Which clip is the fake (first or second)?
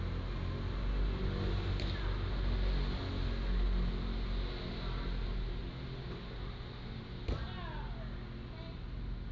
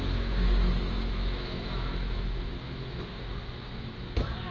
second